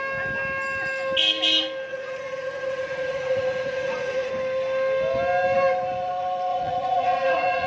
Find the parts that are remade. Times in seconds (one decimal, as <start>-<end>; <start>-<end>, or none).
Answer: 1.9-4.3; 6.5-7.7